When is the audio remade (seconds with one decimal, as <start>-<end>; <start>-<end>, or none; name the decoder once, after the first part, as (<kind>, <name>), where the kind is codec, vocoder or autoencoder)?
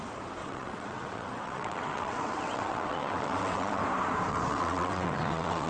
0.4-3.8 (vocoder, WaveNeXt); 4.3-5.7